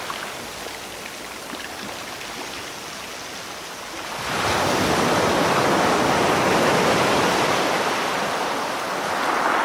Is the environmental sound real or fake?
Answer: real